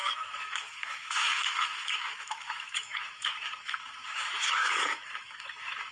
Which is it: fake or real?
fake